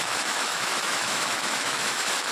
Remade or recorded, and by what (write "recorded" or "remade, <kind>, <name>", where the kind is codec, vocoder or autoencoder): remade, autoencoder, DAC-VAE